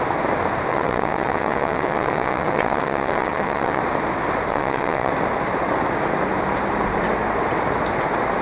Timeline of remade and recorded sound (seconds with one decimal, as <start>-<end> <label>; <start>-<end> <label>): 0.0-0.7 recorded; 0.7-3.8 remade; 3.8-4.5 recorded; 4.5-5.1 remade; 5.1-8.4 recorded